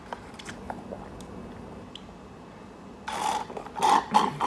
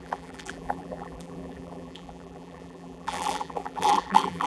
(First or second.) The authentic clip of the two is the first